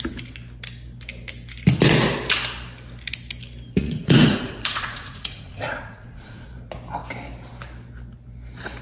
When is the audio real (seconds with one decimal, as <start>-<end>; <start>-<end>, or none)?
0.0-3.8; 6.5-8.8